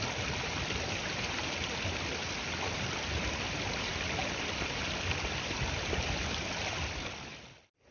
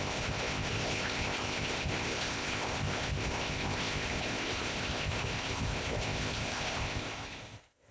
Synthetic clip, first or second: second